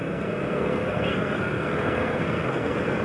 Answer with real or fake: fake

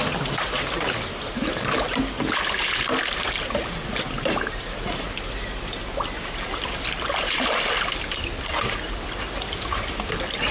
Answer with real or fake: real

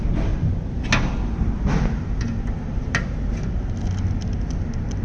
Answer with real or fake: real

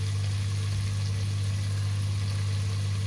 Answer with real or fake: real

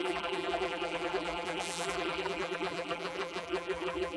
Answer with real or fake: fake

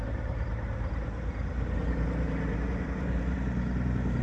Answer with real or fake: fake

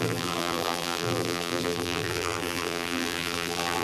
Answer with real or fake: fake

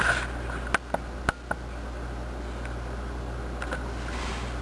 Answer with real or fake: real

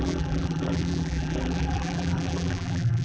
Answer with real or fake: fake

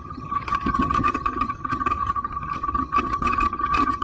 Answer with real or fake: fake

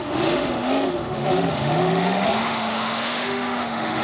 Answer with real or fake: fake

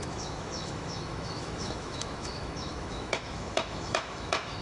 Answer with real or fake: fake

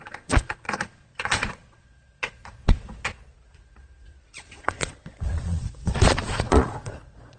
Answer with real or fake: fake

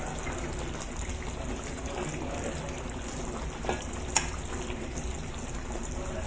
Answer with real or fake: real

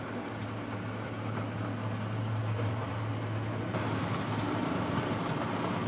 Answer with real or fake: real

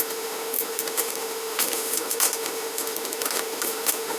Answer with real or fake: fake